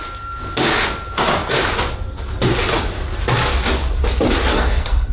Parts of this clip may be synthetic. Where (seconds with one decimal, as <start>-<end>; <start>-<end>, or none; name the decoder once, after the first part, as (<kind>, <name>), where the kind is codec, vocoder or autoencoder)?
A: 4.5-5.1 (codec, SNAC)